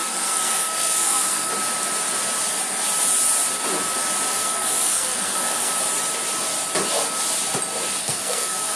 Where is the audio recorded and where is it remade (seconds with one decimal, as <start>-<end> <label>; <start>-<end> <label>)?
0.0-1.5 remade; 1.5-4.3 recorded; 4.3-5.7 remade; 5.7-8.0 recorded; 8.0-8.8 remade